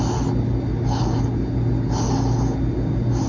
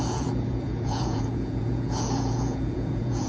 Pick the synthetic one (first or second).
second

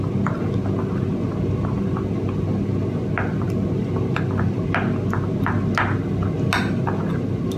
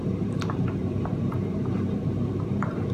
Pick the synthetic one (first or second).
second